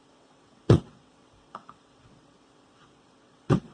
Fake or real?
fake